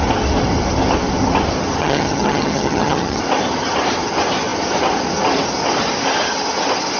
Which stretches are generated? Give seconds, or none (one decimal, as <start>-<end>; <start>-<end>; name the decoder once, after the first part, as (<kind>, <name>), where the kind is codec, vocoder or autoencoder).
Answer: 1.8-3.2 (vocoder, HiFi-GAN)